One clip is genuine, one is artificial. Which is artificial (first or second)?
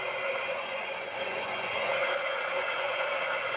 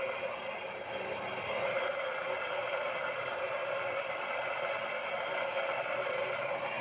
first